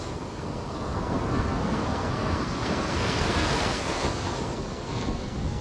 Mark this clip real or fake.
fake